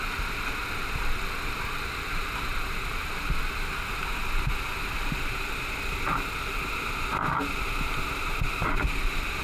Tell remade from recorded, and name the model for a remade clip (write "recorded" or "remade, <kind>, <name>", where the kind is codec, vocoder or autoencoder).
recorded